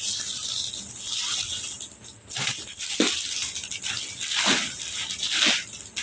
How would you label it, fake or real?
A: real